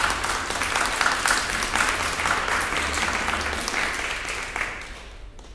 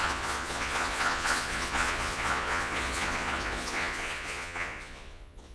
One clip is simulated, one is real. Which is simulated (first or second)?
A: second